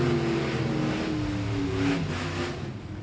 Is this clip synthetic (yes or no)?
no